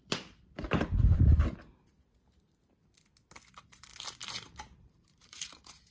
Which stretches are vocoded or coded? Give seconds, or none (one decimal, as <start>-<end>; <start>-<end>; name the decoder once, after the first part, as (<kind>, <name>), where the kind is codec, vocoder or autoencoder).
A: 0.0-1.3 (vocoder, BigVGAN v2); 3.5-3.9; 4.6-5.9